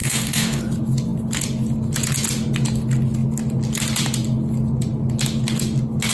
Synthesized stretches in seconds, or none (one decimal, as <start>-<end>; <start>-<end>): 0.0-0.6